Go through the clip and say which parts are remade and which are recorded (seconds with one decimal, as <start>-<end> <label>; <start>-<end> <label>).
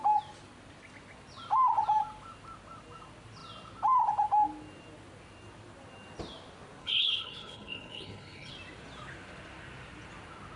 0.0-6.8 recorded; 6.8-8.5 remade; 8.5-10.6 recorded